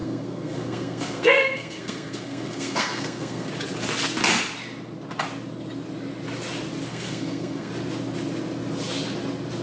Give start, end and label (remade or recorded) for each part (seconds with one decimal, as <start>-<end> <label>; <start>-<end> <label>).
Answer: 0.0-3.5 remade; 3.5-6.9 recorded; 6.9-7.7 remade; 7.7-9.6 recorded